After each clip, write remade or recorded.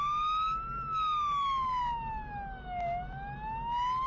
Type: recorded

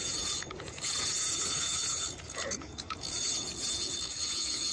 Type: remade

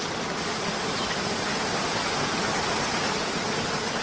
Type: recorded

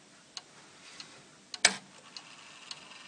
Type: recorded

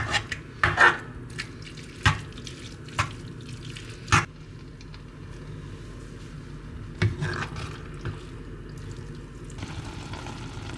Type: recorded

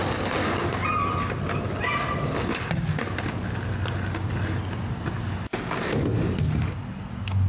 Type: recorded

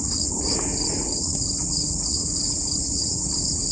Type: remade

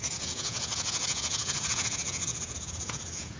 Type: remade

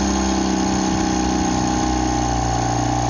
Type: recorded